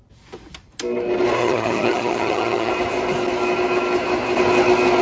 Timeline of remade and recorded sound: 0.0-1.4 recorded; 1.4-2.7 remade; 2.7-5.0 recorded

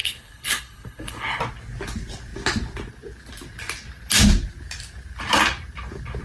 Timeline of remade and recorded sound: 0.0-1.4 remade; 1.4-6.2 recorded

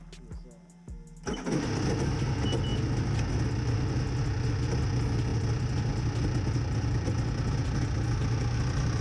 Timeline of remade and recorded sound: 0.0-9.0 recorded

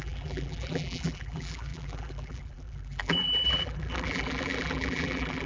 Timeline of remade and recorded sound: 0.0-5.5 remade